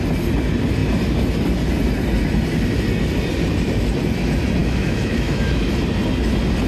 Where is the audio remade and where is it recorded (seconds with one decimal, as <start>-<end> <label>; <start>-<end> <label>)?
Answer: 0.0-4.6 recorded; 4.6-5.7 remade; 5.7-6.7 recorded